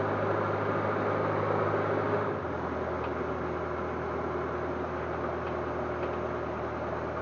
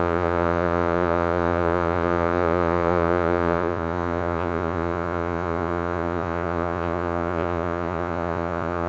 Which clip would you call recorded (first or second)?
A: first